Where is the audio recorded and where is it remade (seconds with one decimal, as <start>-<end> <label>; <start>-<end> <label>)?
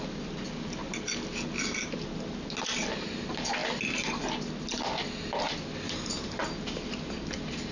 0.0-7.7 recorded